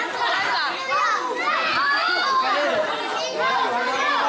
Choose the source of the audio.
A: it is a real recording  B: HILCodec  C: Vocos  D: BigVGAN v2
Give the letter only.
A